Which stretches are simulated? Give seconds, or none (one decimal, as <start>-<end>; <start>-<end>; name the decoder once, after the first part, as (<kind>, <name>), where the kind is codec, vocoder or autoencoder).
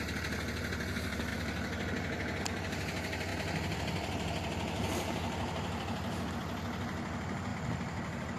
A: 1.3-2.4 (vocoder, BigVGAN v2); 3.3-6.3; 7.5-8.4